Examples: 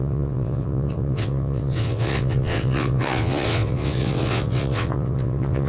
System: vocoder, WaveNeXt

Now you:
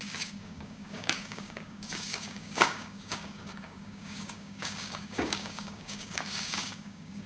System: codec, DAC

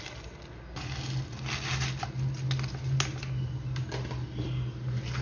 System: none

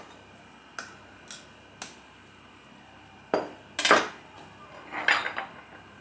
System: none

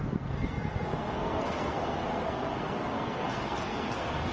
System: codec, SNAC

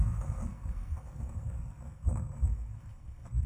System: codec, SNAC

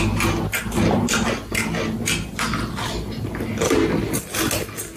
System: none